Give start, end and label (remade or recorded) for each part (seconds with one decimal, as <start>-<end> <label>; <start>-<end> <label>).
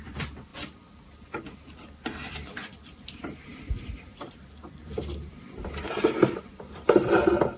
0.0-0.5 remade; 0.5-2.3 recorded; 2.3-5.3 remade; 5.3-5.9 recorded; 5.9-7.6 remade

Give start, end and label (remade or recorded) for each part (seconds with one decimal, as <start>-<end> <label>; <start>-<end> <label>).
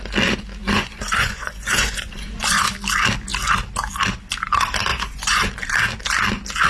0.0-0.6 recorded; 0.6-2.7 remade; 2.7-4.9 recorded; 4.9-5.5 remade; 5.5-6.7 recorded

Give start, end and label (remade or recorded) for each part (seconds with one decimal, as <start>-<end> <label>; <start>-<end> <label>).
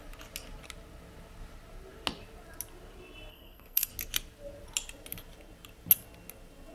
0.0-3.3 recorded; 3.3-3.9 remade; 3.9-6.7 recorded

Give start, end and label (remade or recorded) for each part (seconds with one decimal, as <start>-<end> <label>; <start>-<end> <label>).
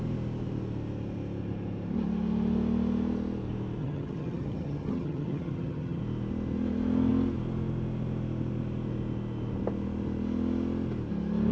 0.0-3.8 recorded; 3.8-6.0 remade; 6.0-11.5 recorded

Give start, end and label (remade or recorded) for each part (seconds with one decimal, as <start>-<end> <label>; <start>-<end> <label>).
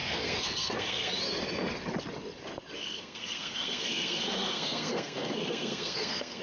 0.0-1.1 remade; 1.1-2.8 recorded; 2.8-6.4 remade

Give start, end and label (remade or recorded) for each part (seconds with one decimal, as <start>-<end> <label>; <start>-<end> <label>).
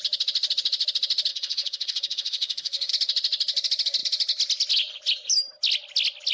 0.0-1.3 recorded; 1.3-2.9 remade; 2.9-6.3 recorded